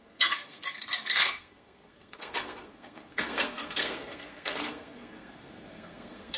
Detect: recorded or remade remade